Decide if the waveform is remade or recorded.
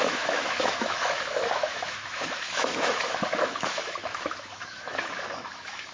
remade